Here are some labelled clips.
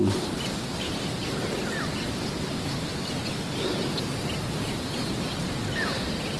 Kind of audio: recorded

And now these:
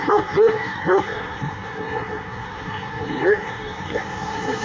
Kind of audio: remade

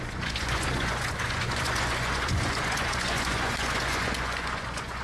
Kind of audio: remade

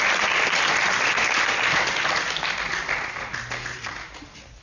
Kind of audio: recorded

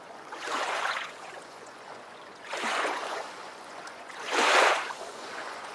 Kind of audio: remade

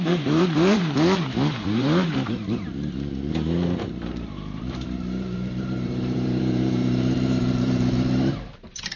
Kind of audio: remade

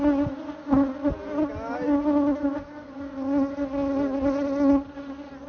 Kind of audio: recorded